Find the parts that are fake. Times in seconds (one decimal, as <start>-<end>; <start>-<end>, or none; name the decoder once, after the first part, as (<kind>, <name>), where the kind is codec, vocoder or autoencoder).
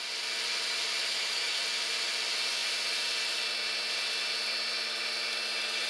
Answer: 1.1-1.6 (autoencoder, DAC-VAE)